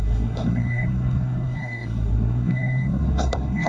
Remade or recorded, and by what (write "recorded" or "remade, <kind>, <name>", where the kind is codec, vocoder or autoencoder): remade, codec, SNAC